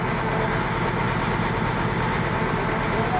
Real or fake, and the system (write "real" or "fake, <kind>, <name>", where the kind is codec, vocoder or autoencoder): real